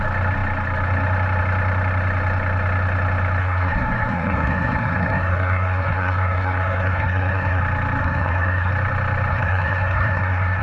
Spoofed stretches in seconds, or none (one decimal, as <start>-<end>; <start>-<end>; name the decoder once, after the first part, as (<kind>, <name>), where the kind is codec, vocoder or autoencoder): 3.4-7.6 (codec, SNAC); 8.0-8.7; 9.3-10.6